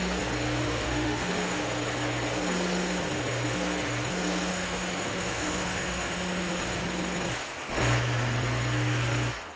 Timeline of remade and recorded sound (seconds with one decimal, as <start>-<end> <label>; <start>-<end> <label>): 0.0-0.6 recorded; 0.6-1.3 remade; 1.3-4.5 recorded; 4.5-6.6 remade; 6.6-9.6 recorded